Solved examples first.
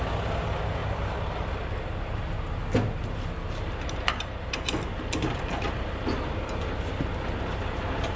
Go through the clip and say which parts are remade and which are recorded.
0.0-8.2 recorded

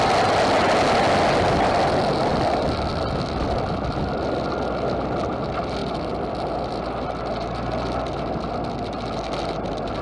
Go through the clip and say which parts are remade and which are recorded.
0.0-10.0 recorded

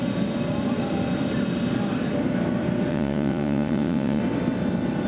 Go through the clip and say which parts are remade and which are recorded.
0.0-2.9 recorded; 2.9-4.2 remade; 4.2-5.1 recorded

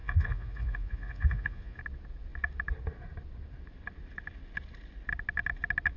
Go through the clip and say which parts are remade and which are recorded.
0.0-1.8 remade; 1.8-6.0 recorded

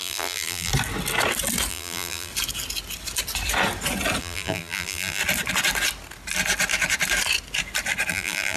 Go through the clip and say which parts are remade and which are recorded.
0.0-0.7 remade; 0.7-1.7 recorded; 1.7-2.3 remade; 2.3-4.2 recorded; 4.2-5.2 remade; 5.2-8.1 recorded; 8.1-8.6 remade

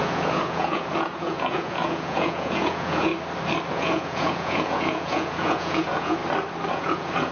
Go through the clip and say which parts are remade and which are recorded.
0.0-3.1 remade; 3.1-3.7 recorded; 3.7-6.2 remade; 6.2-6.7 recorded; 6.7-7.3 remade

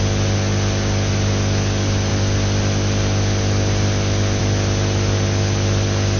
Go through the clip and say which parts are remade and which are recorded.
0.0-6.2 recorded

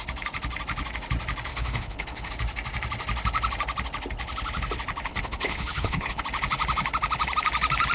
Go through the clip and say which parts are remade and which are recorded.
0.0-1.5 recorded; 1.5-2.3 remade; 2.3-5.1 recorded; 5.1-6.2 remade; 6.2-7.9 recorded